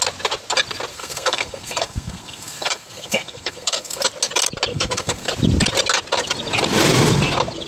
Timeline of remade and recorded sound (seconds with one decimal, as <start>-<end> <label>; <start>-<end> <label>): 0.0-0.9 recorded; 0.9-4.0 remade; 4.0-4.7 recorded; 4.7-5.3 remade; 5.3-7.7 recorded